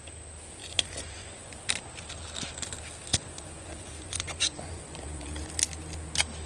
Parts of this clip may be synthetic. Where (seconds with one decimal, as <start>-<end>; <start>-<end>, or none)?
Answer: 0.6-1.6; 3.1-5.5